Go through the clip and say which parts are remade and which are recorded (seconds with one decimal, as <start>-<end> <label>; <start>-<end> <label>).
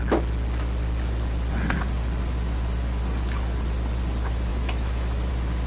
0.0-4.5 recorded; 4.5-5.3 remade; 5.3-5.7 recorded